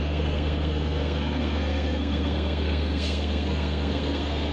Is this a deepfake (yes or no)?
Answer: yes